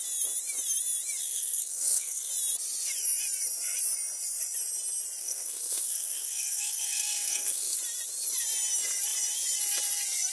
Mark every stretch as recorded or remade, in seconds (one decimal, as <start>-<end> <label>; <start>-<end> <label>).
0.0-1.2 recorded; 1.2-2.3 remade; 2.3-5.2 recorded; 5.2-7.8 remade; 7.8-10.3 recorded